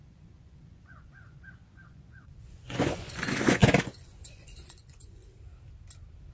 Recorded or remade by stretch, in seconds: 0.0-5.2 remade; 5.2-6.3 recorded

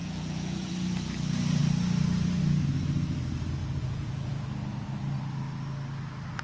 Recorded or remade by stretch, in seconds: 0.0-0.7 remade; 0.7-3.6 recorded; 3.6-4.4 remade; 4.4-6.4 recorded